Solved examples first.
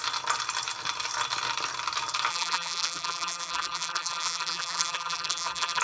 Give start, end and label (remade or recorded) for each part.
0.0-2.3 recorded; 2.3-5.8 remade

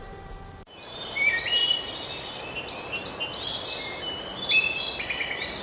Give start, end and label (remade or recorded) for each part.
0.0-5.6 recorded